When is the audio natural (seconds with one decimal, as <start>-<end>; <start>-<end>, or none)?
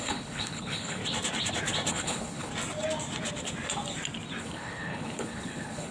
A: 1.0-1.9; 2.5-4.4